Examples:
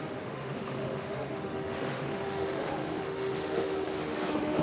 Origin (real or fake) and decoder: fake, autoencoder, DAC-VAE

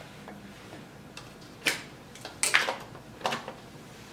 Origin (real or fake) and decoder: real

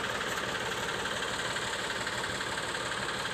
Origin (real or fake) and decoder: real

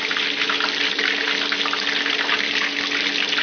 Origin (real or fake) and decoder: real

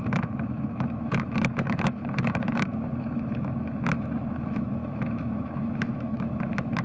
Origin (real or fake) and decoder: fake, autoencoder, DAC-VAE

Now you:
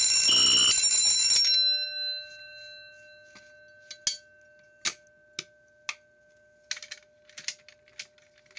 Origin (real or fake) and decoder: real